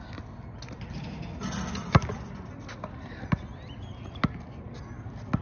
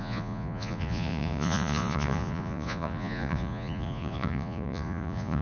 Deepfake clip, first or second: second